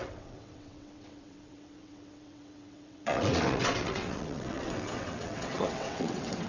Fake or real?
fake